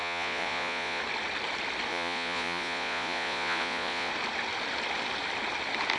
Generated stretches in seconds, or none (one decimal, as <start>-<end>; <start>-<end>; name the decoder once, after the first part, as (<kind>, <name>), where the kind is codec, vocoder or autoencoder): 0.0-1.0 (vocoder, Vocos); 1.9-4.1